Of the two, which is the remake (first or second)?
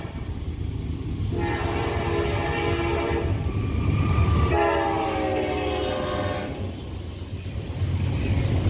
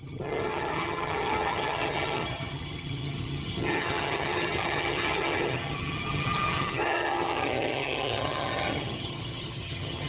second